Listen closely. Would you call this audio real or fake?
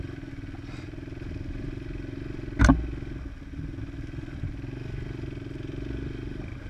real